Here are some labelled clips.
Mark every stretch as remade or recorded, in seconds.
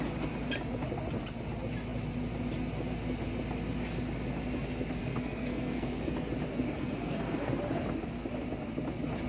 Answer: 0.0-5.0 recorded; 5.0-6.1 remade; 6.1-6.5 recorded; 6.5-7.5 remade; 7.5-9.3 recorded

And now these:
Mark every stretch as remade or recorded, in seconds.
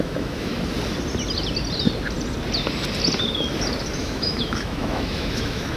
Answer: 0.0-0.5 remade; 0.5-4.0 recorded; 4.0-5.8 remade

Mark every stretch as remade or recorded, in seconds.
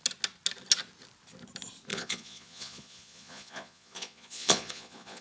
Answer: 0.0-1.9 recorded; 1.9-5.2 remade